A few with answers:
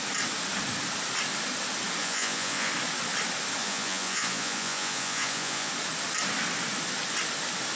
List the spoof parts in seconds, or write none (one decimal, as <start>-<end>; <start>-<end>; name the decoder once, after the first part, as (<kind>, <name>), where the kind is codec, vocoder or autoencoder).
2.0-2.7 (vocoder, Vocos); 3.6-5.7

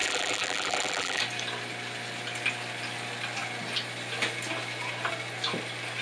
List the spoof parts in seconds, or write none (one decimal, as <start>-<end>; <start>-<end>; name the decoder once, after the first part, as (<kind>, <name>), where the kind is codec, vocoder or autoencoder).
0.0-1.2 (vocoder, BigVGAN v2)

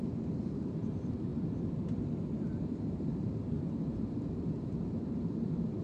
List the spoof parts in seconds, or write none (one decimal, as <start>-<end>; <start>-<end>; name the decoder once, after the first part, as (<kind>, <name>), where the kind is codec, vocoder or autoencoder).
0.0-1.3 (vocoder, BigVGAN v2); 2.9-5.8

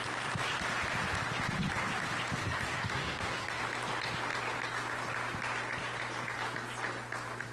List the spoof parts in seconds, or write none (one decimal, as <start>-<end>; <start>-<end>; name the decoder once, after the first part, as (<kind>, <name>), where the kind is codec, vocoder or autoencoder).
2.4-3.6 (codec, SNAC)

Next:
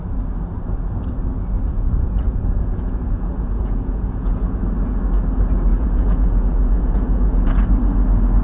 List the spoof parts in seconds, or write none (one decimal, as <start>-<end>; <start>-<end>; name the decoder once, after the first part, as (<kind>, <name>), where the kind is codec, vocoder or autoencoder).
1.7-4.6 (vocoder, Vocos); 5.7-7.5

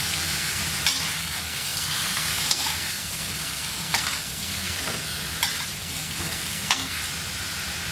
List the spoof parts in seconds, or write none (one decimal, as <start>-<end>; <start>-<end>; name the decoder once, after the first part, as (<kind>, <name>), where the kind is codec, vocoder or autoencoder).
0.0-0.6 (codec, SNAC); 1.1-5.2; 5.8-7.0